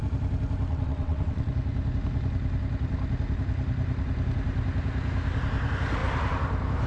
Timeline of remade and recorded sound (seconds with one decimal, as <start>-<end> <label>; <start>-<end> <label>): 0.0-0.7 recorded; 0.7-1.5 remade; 1.5-6.9 recorded